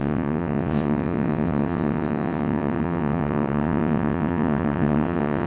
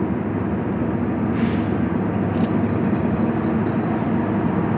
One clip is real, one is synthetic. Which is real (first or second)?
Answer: second